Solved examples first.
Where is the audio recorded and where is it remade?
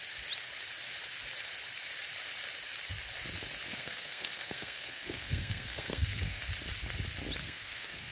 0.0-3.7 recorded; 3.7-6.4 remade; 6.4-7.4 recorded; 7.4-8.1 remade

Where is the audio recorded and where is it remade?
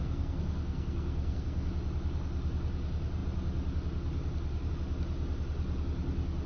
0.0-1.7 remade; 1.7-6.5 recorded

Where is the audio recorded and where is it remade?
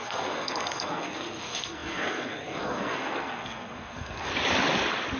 0.0-4.3 remade; 4.3-5.2 recorded